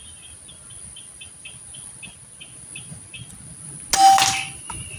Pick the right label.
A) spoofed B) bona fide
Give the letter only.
B